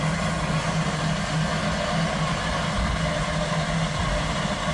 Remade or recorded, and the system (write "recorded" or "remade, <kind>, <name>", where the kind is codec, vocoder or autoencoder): recorded